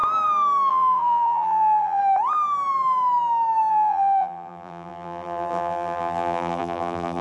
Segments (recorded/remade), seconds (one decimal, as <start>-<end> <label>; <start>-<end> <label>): 0.0-0.7 recorded; 0.7-2.0 remade; 2.0-3.7 recorded; 3.7-7.2 remade